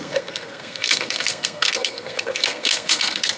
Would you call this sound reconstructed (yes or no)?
yes